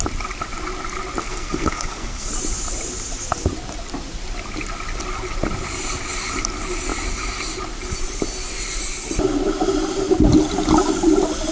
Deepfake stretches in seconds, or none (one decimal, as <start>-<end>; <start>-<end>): 1.2-2.3